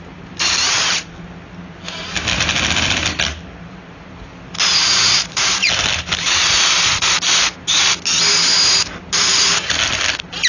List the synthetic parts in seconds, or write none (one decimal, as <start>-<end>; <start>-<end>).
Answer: 4.8-5.5